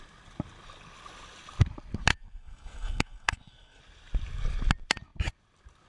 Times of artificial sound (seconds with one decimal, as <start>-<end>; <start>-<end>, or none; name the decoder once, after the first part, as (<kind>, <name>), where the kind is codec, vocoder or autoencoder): 2.1-3.8 (codec, SNAC)